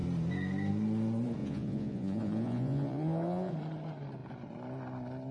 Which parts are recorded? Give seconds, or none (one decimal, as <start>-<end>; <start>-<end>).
0.0-1.4; 3.5-5.3